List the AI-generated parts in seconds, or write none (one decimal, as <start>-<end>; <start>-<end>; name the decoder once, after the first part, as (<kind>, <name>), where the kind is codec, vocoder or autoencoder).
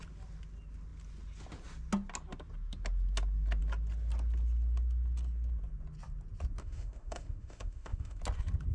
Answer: 6.6-8.2 (autoencoder, DAC-VAE)